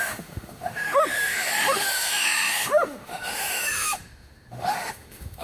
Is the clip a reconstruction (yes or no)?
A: yes